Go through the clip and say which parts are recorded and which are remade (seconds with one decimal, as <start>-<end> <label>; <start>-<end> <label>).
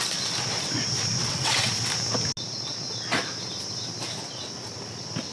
0.0-1.2 recorded; 1.2-1.7 remade; 1.7-5.3 recorded